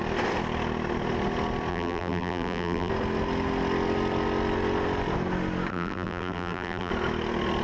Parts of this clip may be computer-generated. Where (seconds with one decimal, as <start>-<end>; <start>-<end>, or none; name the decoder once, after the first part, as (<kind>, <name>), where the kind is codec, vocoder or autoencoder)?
1.7-2.9 (vocoder, BigVGAN v2); 5.7-6.9